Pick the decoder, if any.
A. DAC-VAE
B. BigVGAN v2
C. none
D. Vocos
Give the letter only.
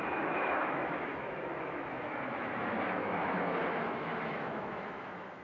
A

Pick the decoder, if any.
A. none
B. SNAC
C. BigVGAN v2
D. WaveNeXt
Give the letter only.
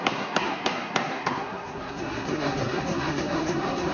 B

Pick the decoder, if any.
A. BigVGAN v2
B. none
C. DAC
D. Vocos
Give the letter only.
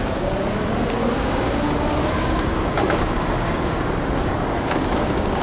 C